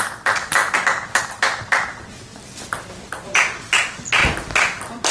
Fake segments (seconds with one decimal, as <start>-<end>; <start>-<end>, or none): none